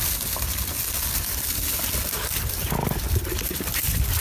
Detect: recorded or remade recorded